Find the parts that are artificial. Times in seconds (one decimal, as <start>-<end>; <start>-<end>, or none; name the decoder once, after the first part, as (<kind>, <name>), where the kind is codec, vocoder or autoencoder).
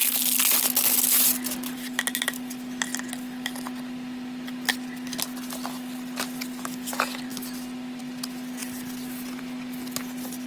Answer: none